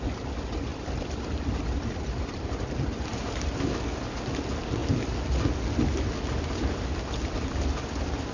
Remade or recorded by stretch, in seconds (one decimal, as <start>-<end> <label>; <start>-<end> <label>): 0.0-0.7 recorded; 0.7-2.2 remade; 2.2-3.1 recorded; 3.1-3.7 remade; 3.7-8.3 recorded